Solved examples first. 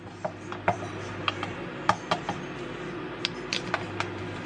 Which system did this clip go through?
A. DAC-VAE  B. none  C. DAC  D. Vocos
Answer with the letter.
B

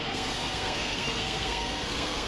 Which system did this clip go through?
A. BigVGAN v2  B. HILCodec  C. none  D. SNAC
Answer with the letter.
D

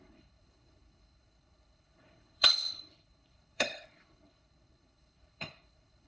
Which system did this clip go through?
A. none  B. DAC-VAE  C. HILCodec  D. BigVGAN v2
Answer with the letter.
C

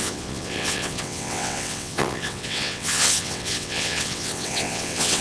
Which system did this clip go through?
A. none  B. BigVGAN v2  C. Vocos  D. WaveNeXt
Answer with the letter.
D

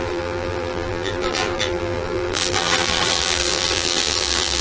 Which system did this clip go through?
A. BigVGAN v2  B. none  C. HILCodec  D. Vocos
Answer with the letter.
A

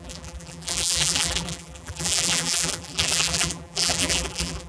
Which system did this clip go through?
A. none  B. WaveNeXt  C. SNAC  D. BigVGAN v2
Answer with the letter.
D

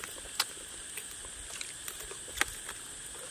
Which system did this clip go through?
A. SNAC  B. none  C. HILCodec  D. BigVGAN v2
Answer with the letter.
B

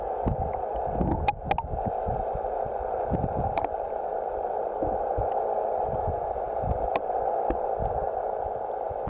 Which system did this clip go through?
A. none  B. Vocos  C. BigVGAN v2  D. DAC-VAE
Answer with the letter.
A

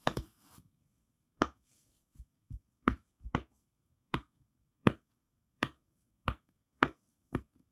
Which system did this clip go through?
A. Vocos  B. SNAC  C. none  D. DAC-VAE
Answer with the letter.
B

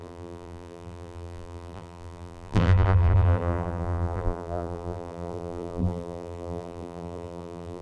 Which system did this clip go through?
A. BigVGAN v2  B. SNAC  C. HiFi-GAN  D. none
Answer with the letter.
A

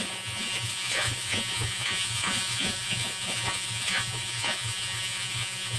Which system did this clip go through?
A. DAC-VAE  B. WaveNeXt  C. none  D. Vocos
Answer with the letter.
D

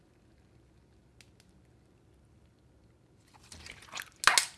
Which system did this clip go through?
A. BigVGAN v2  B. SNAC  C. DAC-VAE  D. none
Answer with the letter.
D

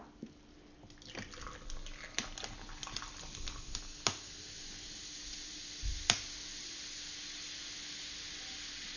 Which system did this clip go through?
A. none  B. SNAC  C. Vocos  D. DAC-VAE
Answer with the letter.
A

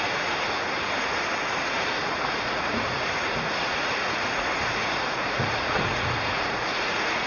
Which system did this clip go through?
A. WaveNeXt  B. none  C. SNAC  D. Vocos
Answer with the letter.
D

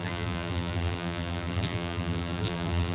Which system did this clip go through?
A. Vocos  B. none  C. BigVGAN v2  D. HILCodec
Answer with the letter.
C